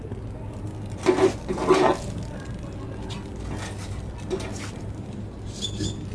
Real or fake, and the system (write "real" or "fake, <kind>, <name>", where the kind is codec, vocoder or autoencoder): real